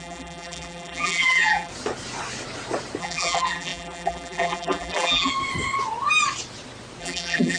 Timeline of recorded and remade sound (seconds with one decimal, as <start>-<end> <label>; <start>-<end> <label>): 0.0-1.7 remade; 1.7-3.0 recorded; 3.0-5.3 remade; 5.3-7.0 recorded; 7.0-7.6 remade